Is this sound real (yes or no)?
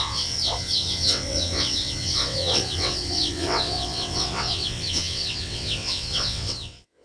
no